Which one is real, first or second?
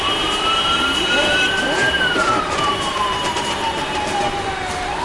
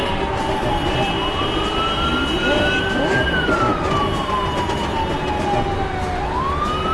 second